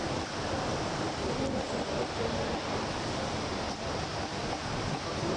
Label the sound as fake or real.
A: real